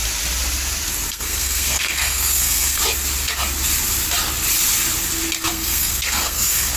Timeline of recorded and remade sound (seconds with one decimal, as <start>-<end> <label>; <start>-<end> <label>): 0.0-1.1 recorded; 1.1-2.8 remade; 2.8-5.5 recorded; 5.5-6.8 remade